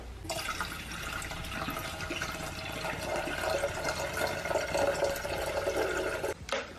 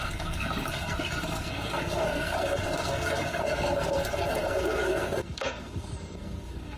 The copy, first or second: second